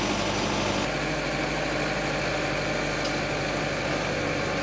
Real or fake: real